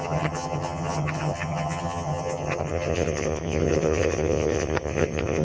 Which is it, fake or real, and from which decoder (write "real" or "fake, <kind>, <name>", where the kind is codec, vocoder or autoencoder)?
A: fake, vocoder, HiFi-GAN